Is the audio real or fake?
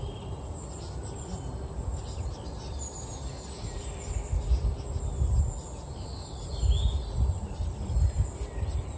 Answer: real